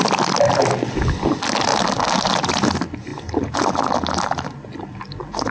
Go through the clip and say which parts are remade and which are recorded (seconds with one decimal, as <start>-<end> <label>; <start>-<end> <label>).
0.0-3.1 recorded; 3.1-3.9 remade; 3.9-5.5 recorded